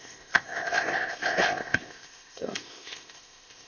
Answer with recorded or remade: remade